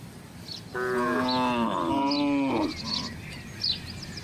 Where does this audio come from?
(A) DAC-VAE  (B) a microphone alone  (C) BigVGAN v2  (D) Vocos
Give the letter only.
B